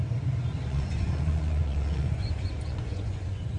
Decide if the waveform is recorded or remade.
remade